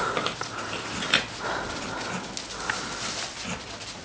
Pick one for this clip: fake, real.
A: real